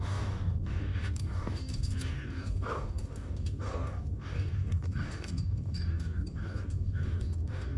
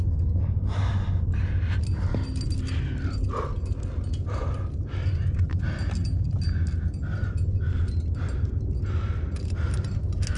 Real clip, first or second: second